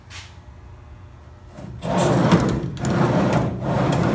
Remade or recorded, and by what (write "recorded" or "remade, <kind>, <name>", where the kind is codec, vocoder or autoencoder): recorded